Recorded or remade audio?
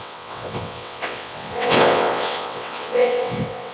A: remade